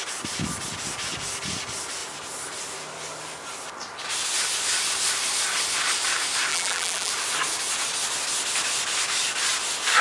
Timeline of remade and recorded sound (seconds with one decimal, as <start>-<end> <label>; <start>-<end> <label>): 0.0-6.5 recorded; 6.5-7.1 remade; 7.1-10.0 recorded